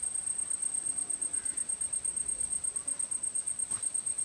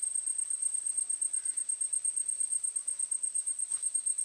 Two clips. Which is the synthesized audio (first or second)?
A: second